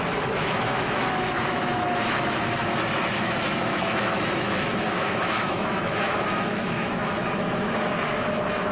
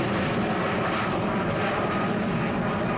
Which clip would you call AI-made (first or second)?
first